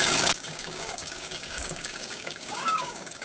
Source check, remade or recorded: remade